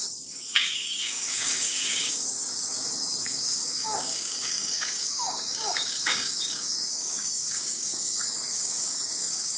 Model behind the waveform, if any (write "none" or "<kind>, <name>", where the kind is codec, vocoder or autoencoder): codec, DAC